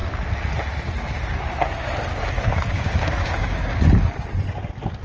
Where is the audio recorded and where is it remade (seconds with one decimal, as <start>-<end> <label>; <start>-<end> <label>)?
0.0-2.5 recorded; 2.5-3.6 remade; 3.6-5.0 recorded